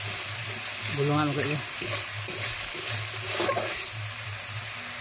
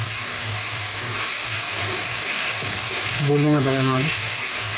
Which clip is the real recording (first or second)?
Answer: first